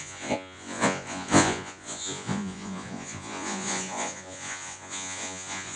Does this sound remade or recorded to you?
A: remade